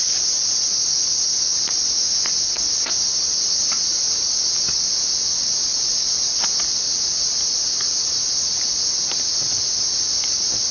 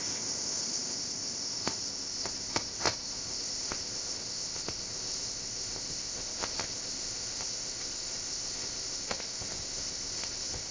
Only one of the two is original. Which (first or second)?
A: first